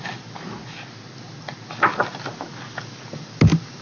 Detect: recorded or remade recorded